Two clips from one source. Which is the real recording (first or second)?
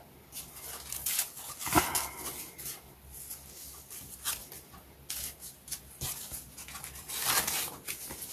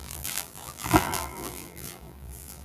first